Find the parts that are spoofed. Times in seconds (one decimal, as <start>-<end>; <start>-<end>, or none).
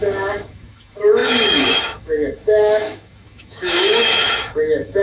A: 0.0-5.0